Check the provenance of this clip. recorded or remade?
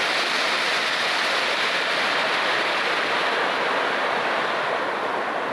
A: recorded